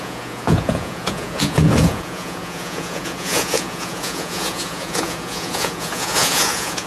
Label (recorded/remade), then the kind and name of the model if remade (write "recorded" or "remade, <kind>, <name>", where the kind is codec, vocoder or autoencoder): remade, vocoder, Vocos